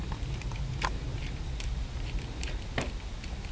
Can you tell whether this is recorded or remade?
recorded